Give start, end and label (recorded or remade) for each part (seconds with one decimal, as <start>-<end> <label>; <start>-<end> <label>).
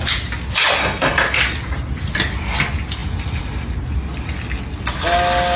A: 0.0-0.8 recorded; 0.8-1.4 remade; 1.4-5.6 recorded